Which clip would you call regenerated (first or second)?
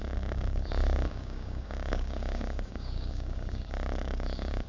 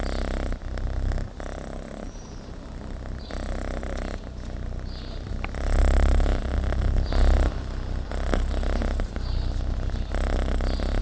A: first